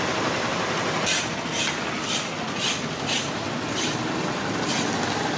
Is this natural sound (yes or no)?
yes